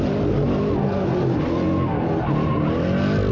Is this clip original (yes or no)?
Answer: yes